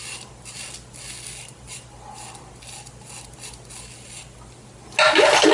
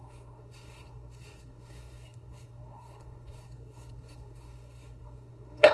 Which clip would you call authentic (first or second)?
first